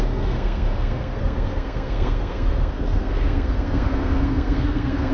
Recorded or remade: remade